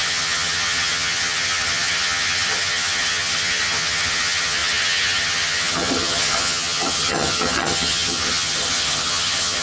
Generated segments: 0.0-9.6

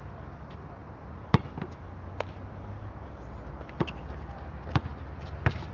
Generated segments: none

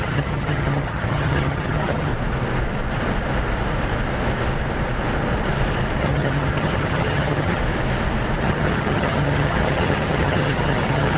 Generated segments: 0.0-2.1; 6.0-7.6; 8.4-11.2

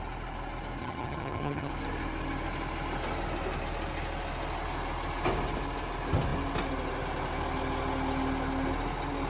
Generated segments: 0.8-1.7

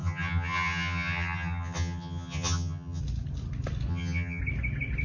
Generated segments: 0.0-3.0; 3.9-4.4

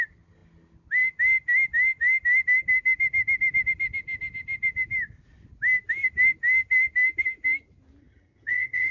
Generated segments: 8.0-8.9

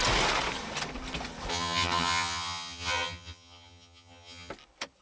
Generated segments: 1.5-4.5